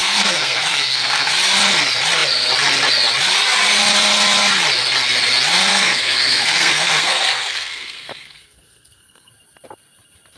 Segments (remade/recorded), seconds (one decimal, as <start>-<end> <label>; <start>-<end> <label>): 0.0-1.3 remade; 1.3-5.7 recorded; 5.7-9.3 remade; 9.3-10.4 recorded